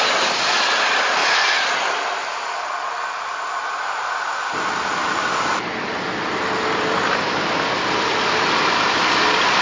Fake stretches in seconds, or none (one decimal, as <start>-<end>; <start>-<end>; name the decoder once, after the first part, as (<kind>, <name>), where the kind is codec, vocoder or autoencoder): none